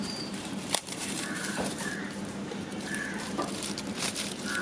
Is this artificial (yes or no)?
yes